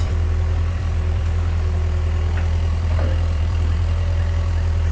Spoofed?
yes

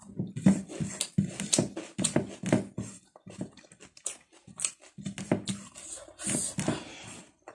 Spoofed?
no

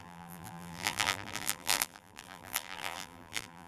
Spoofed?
yes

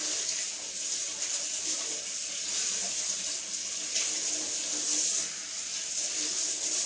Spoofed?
no